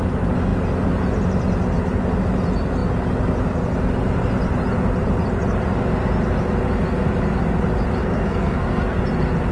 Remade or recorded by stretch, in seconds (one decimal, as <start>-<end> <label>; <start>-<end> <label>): 0.0-8.0 recorded; 8.0-9.0 remade; 9.0-9.5 recorded